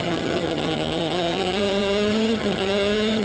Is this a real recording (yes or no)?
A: no